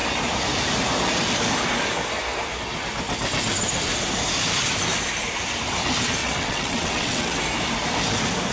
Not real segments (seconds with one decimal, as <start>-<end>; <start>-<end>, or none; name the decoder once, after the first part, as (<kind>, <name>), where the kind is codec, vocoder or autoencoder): 6.2-7.4 (vocoder, WaveNeXt)